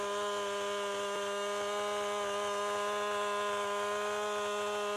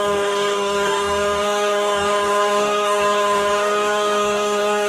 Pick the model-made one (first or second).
second